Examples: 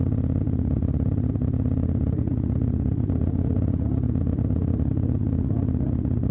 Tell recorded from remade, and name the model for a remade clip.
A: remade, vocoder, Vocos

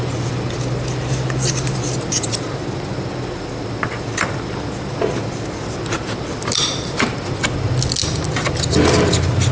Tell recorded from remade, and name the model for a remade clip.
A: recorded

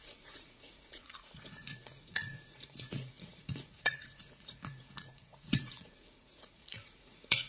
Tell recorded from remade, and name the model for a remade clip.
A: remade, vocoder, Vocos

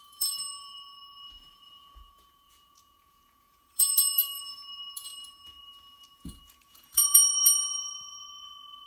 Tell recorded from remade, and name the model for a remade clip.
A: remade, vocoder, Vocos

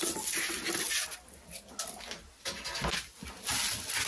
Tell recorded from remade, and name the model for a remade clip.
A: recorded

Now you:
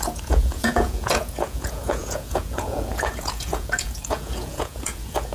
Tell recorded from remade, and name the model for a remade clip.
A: remade, vocoder, Vocos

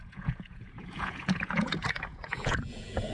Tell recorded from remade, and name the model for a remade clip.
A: remade, vocoder, Vocos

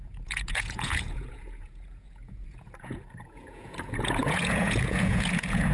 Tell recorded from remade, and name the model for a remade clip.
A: remade, vocoder, Vocos